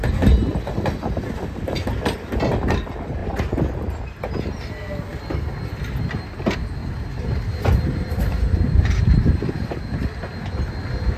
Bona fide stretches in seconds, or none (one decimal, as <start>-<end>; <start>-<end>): 0.0-6.8; 9.8-11.2